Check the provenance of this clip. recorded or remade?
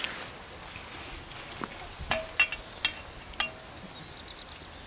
recorded